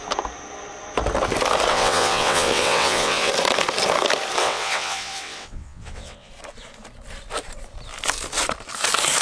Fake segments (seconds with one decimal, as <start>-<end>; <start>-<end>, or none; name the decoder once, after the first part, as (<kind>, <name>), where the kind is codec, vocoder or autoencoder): 1.7-3.3 (vocoder, WaveNeXt); 4.4-6.3